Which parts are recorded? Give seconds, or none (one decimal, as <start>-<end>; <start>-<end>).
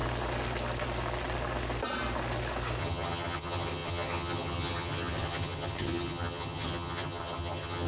0.0-2.8